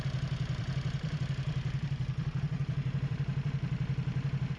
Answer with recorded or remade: remade